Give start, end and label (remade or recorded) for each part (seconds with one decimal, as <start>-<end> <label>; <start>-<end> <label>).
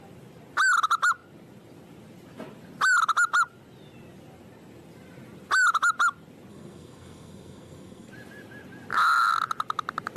0.0-6.5 recorded; 6.5-8.1 remade; 8.1-10.2 recorded